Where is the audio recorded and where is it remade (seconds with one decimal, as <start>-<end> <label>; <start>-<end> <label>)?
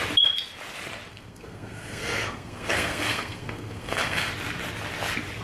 0.0-1.1 recorded; 1.1-4.3 remade; 4.3-5.4 recorded